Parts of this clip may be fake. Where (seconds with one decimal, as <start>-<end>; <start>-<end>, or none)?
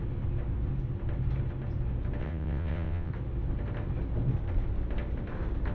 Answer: 2.2-3.1